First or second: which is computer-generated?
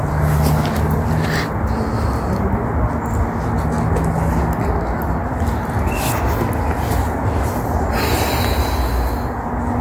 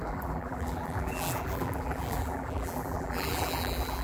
second